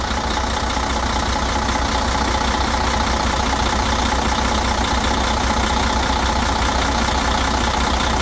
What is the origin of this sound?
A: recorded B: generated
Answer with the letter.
A